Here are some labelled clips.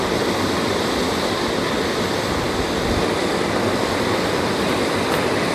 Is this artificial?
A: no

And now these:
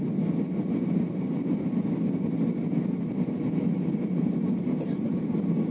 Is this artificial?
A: no